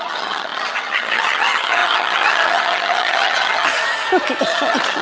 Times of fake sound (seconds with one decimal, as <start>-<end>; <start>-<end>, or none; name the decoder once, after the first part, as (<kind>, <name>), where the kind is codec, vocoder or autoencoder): 0.0-3.7 (vocoder, HiFi-GAN); 4.4-5.0